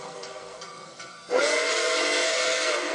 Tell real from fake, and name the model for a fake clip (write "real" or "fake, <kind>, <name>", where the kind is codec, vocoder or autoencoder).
fake, codec, SNAC